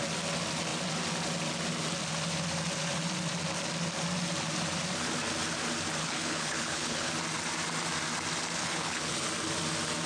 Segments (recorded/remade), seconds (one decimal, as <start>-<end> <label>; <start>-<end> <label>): 0.0-6.0 recorded; 6.0-7.1 remade; 7.1-8.6 recorded; 8.6-9.2 remade; 9.2-10.1 recorded